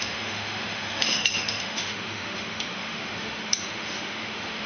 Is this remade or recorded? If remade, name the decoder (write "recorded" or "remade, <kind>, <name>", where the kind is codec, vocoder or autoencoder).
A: remade, autoencoder, DAC-VAE